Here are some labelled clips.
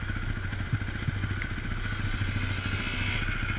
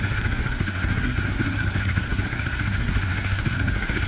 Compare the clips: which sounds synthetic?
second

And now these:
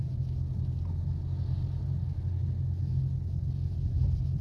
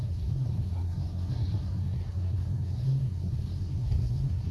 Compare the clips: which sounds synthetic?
second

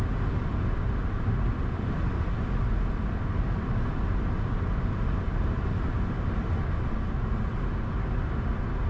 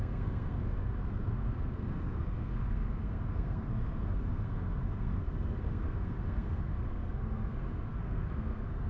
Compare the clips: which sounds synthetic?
second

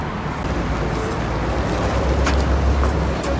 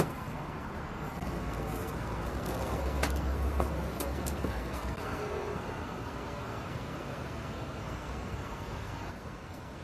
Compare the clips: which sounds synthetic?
second